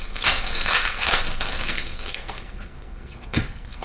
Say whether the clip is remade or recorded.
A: remade